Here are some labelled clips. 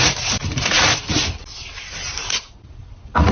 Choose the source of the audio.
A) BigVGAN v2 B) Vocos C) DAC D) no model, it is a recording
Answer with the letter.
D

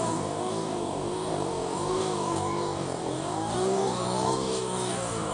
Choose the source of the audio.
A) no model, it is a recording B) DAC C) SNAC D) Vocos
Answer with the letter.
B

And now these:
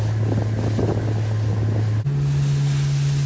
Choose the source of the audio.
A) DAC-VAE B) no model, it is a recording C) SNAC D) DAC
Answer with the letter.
B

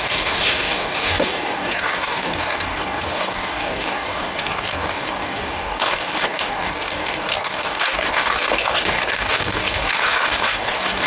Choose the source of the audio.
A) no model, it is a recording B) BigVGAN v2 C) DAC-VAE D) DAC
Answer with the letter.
D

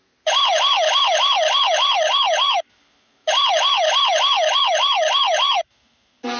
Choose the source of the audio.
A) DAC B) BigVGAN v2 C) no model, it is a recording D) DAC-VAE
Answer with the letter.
C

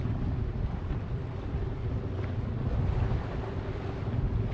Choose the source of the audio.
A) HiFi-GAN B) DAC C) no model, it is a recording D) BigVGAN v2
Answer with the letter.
C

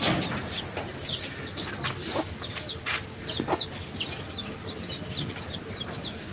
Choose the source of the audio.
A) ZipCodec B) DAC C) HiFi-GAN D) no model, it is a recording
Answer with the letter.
D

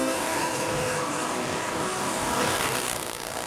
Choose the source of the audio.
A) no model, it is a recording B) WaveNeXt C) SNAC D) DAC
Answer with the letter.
D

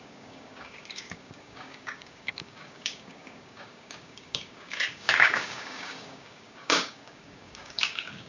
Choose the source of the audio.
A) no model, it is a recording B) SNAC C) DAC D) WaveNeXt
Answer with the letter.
C